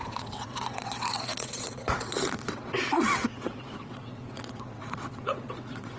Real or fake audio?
fake